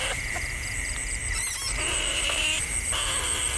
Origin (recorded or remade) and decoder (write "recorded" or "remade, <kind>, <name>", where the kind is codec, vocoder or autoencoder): recorded